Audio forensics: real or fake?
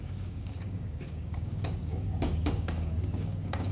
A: fake